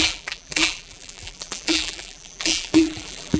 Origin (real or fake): fake